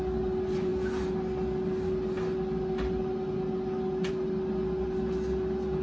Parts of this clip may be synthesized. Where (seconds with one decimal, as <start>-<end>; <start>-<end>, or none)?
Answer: none